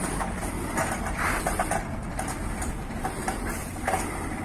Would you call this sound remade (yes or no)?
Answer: no